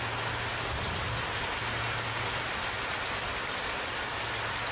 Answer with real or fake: real